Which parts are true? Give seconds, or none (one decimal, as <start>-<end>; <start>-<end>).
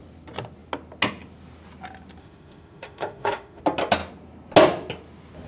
0.0-2.2; 3.6-5.5